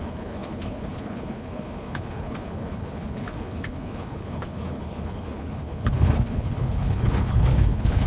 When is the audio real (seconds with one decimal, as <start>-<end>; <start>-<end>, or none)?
none